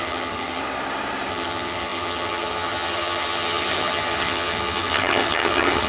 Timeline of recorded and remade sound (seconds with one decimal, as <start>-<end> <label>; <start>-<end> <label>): 0.0-0.6 remade; 0.6-1.3 recorded; 1.3-5.9 remade